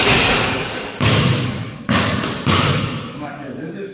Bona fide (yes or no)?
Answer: no